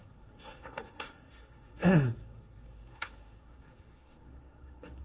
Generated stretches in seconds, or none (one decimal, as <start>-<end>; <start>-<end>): 0.0-5.0